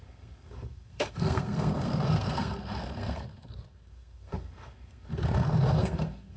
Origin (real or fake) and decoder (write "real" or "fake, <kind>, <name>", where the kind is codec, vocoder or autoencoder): fake, codec, SNAC